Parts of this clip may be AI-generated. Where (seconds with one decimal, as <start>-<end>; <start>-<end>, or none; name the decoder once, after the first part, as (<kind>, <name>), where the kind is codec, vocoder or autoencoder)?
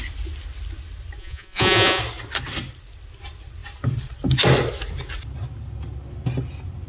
1.2-2.0 (vocoder, Vocos)